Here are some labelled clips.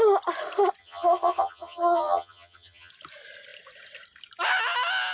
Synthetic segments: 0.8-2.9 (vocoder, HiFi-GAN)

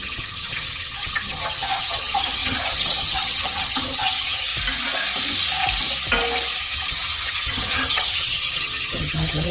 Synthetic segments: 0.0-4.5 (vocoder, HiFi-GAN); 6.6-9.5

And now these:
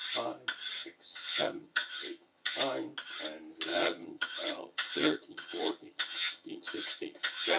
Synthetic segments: 0.8-2.6 (vocoder, HiFi-GAN); 3.7-7.6